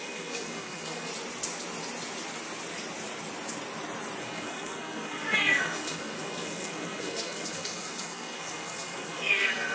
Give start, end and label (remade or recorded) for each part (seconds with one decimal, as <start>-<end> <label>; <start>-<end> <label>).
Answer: 0.0-1.1 remade; 1.1-4.2 recorded; 4.2-9.7 remade